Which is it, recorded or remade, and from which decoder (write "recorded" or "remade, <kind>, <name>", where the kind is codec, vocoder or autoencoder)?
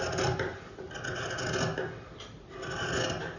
recorded